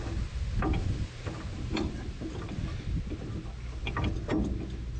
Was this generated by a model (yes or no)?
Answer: no